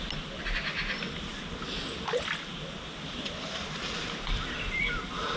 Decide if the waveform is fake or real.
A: real